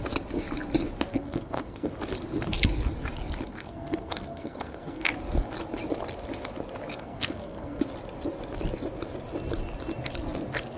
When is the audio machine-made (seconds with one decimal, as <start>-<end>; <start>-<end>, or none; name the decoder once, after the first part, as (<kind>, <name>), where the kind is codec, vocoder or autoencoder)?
1.1-1.9 (codec, SNAC); 3.5-5.1; 6.9-7.8